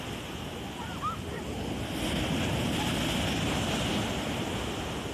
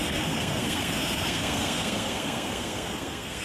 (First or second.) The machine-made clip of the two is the second